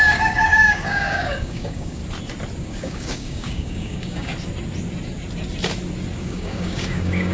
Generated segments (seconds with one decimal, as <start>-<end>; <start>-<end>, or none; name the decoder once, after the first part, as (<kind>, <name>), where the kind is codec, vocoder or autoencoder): 0.0-2.0 (codec, DAC); 2.6-4.3; 6.2-7.3

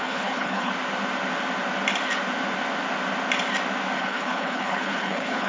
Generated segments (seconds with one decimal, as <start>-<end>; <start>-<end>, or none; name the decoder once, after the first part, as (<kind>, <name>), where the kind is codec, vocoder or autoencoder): 0.0-0.7 (codec, HILCodec); 4.0-5.5

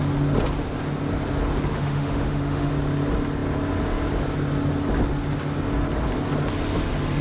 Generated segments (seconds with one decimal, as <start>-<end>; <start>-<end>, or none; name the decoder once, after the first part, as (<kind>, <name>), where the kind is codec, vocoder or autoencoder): 1.7-2.7 (autoencoder, DAC-VAE)

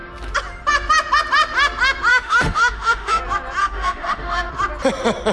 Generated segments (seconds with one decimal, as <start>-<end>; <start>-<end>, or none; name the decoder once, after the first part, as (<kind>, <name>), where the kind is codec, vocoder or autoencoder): 2.1-3.2 (autoencoder, DAC-VAE); 3.6-4.5

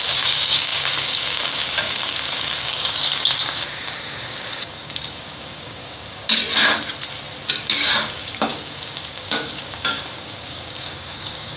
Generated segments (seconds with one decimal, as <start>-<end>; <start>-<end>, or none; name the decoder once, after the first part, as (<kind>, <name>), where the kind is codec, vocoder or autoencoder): 0.0-6.4 (codec, DAC); 7.5-11.6